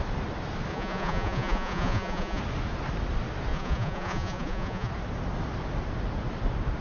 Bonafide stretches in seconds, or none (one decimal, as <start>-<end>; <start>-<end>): 0.0-0.7; 2.4-3.5; 4.9-6.8